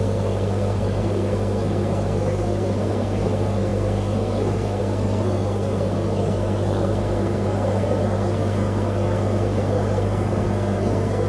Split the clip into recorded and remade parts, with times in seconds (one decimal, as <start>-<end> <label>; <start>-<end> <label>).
0.0-11.3 remade